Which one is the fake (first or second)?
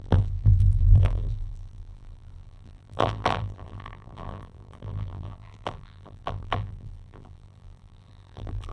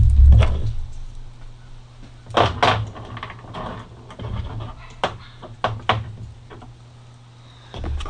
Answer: first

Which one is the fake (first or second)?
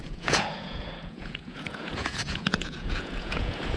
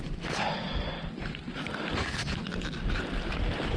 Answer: first